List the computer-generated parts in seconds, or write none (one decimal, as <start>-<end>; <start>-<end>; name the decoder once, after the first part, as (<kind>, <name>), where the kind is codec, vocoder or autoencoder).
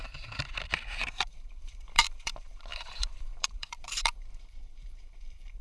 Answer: 1.0-5.6 (vocoder, BigVGAN v2)